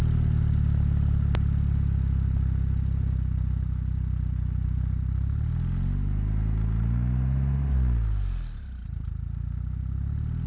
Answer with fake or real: real